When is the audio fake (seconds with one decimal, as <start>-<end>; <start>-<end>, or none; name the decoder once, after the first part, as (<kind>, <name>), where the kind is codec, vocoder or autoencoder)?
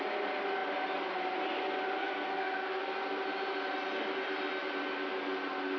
2.0-2.8 (codec, SNAC)